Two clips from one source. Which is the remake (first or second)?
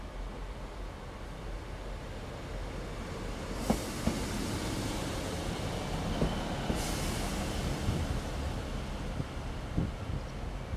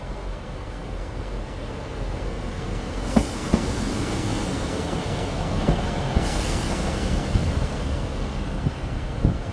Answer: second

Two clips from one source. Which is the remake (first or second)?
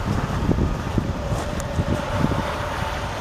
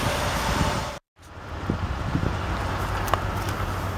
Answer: first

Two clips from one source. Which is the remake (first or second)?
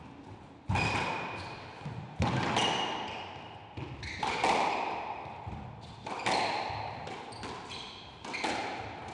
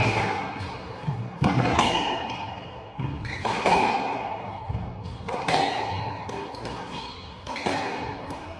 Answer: second